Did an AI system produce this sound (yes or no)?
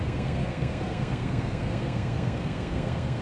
yes